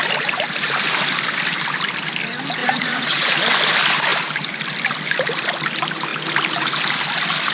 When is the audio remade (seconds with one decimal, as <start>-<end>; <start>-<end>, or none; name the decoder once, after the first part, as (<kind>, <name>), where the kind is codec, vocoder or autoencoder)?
2.6-3.3 (vocoder, Vocos)